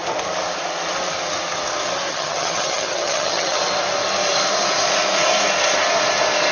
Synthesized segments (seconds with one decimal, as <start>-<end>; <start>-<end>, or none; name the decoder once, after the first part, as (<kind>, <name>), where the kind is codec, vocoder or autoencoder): 2.1-3.6 (vocoder, HiFi-GAN)